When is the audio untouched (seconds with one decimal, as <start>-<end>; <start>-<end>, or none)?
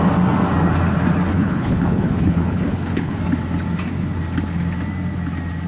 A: 0.0-1.3; 3.2-5.7